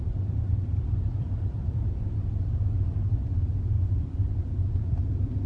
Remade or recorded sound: remade